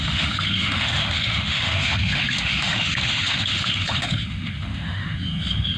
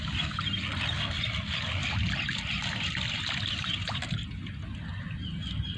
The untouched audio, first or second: second